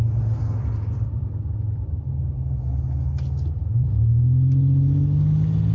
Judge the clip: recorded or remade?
recorded